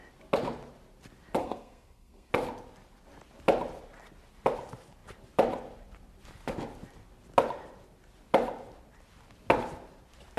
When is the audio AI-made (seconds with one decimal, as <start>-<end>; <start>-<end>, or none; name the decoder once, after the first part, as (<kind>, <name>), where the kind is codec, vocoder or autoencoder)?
1.4-2.3 (codec, SNAC)